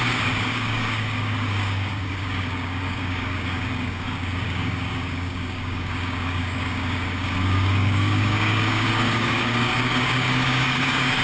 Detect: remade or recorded remade